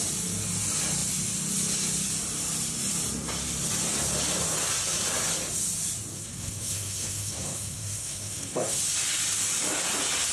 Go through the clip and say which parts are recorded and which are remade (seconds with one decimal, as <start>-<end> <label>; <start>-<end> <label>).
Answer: 0.0-6.1 recorded; 6.1-8.8 remade; 8.8-10.3 recorded